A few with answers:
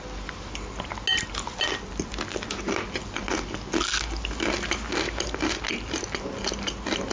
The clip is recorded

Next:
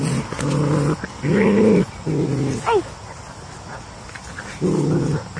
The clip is recorded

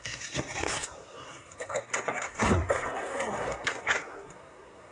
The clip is remade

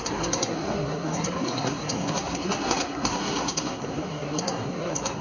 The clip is remade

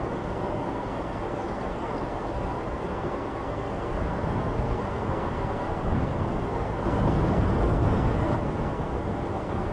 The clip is remade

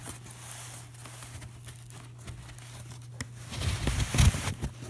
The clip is recorded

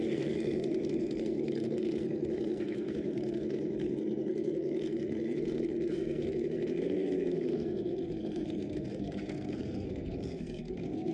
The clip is remade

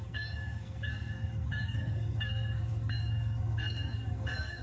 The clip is remade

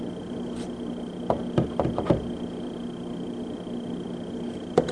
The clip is recorded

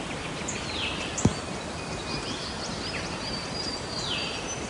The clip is recorded